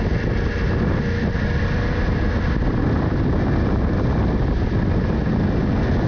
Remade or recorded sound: recorded